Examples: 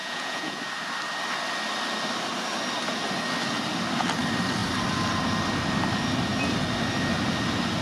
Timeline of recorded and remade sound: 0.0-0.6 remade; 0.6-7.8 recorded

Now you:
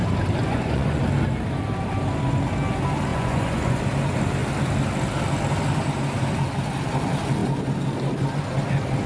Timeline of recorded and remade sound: 0.0-0.4 recorded; 0.4-1.0 remade; 1.0-3.1 recorded; 3.1-3.8 remade; 3.8-9.1 recorded

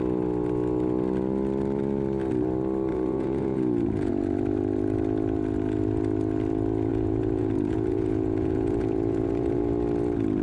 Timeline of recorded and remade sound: 0.0-2.9 recorded; 2.9-4.1 remade; 4.1-6.9 recorded; 6.9-9.6 remade; 9.6-10.4 recorded

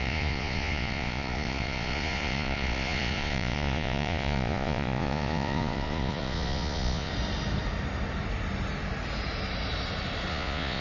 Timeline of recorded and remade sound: 0.0-7.1 remade; 7.1-10.3 recorded; 10.3-10.8 remade

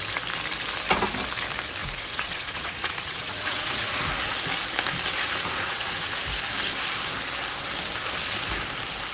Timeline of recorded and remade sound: 0.0-1.8 recorded; 1.8-4.1 remade; 4.1-5.1 recorded; 5.1-6.2 remade; 6.2-9.1 recorded

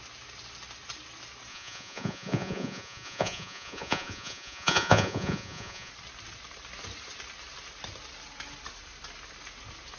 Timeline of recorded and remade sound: 0.0-1.5 recorded; 1.5-5.9 remade; 5.9-10.0 recorded

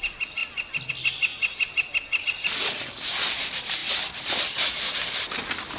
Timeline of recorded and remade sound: 0.0-5.8 recorded

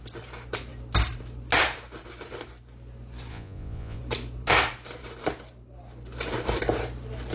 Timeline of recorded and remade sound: 0.0-3.3 recorded; 3.3-4.0 remade; 4.0-7.3 recorded